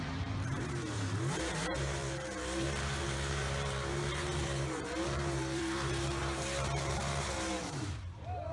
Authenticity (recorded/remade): remade